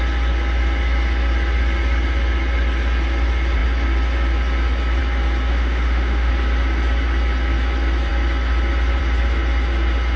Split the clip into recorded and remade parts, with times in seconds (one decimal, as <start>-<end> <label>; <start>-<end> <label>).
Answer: 0.0-5.5 recorded; 5.5-6.3 remade; 6.3-10.2 recorded